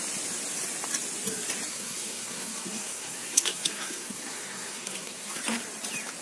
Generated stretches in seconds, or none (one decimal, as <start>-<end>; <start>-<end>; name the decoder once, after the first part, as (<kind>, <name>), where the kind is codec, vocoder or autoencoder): 1.7-5.4 (codec, SNAC)